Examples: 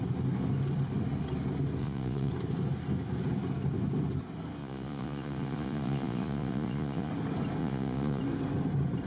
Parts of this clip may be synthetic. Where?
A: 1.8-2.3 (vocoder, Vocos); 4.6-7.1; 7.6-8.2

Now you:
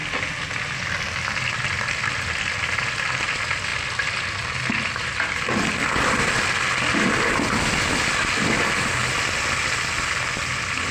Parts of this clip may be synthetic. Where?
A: none

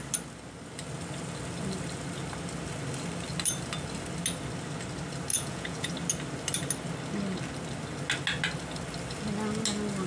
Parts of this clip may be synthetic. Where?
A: 5.3-5.9 (vocoder, Vocos)

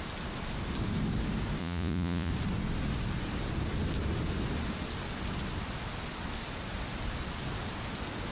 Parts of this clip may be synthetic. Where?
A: 1.6-2.3 (vocoder, Vocos)

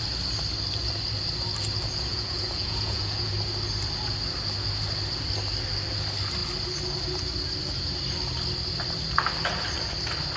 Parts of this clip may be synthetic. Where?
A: 2.1-3.3 (vocoder, Vocos)

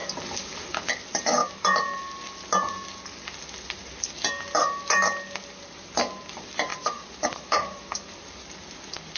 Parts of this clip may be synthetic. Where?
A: 6.7-7.8 (vocoder, Vocos)

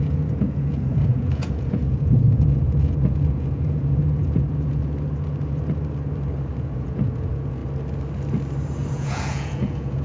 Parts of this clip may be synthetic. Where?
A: 0.0-4.8 (vocoder, Vocos); 6.6-7.6; 8.9-10.0

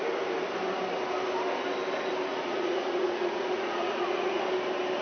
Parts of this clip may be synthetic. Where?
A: 2.3-4.4 (vocoder, Vocos)